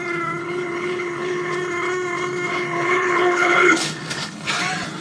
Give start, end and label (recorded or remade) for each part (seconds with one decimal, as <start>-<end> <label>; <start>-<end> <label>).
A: 0.0-0.4 recorded; 0.4-1.5 remade; 1.5-2.5 recorded; 2.5-4.5 remade; 4.5-5.0 recorded

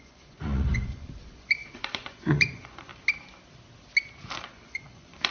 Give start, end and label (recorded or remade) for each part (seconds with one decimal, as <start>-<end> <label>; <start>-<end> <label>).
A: 0.0-2.9 remade; 2.9-4.5 recorded; 4.5-5.3 remade

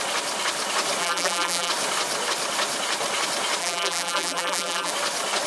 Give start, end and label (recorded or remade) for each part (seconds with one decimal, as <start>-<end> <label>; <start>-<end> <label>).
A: 0.0-1.0 recorded; 1.0-1.7 remade; 1.7-3.6 recorded; 3.6-4.9 remade; 4.9-5.5 recorded

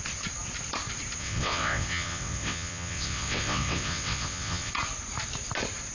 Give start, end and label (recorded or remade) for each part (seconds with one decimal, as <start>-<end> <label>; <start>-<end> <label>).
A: 0.0-1.2 recorded; 1.2-4.7 remade; 4.7-5.9 recorded

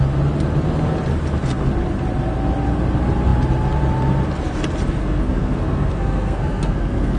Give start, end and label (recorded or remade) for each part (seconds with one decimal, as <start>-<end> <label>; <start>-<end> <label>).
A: 0.0-5.0 recorded; 5.0-7.2 remade

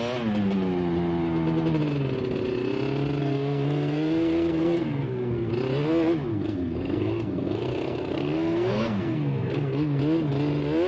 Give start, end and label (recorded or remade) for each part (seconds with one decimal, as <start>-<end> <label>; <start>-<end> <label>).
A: 0.0-3.2 recorded; 3.2-5.5 remade; 5.5-6.3 recorded; 6.3-10.0 remade; 10.0-10.9 recorded